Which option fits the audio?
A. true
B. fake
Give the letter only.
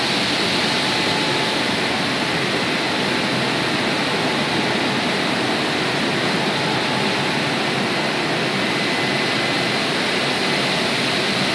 A